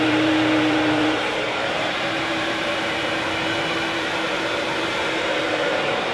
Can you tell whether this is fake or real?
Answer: fake